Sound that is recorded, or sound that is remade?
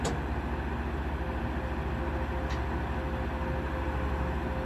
recorded